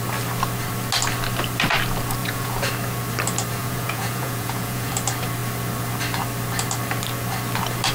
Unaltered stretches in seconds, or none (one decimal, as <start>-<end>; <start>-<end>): 0.0-2.2; 2.7-3.6; 4.9-7.9